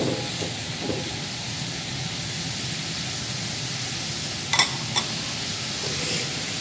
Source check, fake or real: real